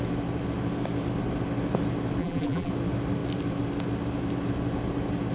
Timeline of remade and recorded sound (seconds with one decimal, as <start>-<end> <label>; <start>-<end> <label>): 0.0-2.2 recorded; 2.2-2.7 remade; 2.7-5.3 recorded